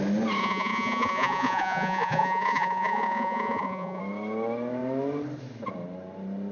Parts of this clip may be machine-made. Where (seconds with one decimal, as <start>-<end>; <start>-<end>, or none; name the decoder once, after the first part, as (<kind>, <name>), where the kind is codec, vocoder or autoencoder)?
0.4-4.0 (vocoder, Vocos)